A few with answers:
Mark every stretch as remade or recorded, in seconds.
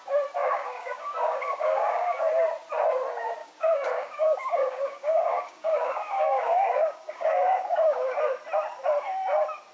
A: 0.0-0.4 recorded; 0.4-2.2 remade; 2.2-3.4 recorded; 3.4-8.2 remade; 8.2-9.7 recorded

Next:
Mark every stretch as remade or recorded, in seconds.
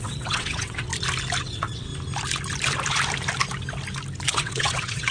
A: 0.0-0.9 remade; 0.9-1.4 recorded; 1.4-1.9 remade; 1.9-4.3 recorded; 4.3-5.1 remade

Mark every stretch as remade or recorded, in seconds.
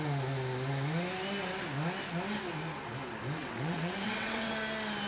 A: 0.0-3.4 recorded; 3.4-4.5 remade; 4.5-5.1 recorded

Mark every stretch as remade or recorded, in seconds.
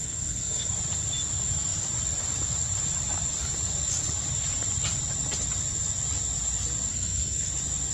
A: 0.0-0.7 remade; 0.7-6.9 recorded; 6.9-7.5 remade; 7.5-7.9 recorded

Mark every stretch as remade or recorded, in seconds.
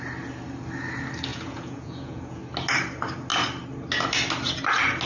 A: 0.0-1.3 recorded; 1.3-2.4 remade; 2.4-5.1 recorded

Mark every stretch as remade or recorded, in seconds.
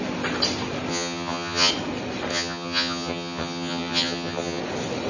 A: 0.0-0.9 recorded; 0.9-1.7 remade; 1.7-2.3 recorded; 2.3-4.6 remade; 4.6-5.1 recorded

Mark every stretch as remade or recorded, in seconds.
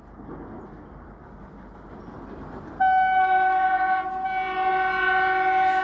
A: 0.0-5.8 recorded